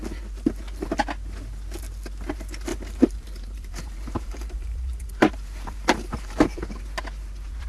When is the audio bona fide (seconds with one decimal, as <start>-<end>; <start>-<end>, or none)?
0.0-2.7; 6.7-7.7